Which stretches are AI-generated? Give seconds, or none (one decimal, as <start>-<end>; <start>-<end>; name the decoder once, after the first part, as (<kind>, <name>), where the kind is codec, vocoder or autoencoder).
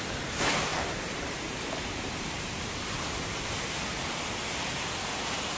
0.7-3.6 (vocoder, BigVGAN v2)